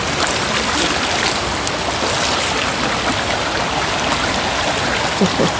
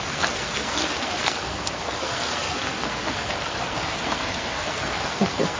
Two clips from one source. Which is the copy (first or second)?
second